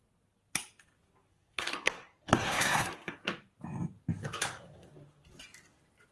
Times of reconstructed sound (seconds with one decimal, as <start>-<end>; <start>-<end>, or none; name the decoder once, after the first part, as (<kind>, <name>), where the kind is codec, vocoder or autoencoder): 1.3-3.3 (codec, SNAC); 4.2-4.9